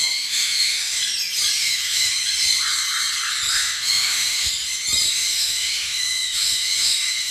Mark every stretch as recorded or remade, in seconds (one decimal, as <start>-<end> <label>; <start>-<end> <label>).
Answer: 0.0-1.0 remade; 1.0-1.6 recorded; 1.6-2.1 remade; 2.1-3.5 recorded; 3.5-4.5 remade; 4.5-5.1 recorded; 5.1-7.3 remade